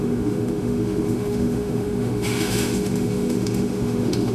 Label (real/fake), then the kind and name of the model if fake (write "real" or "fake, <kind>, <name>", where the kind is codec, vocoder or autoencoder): fake, autoencoder, DAC-VAE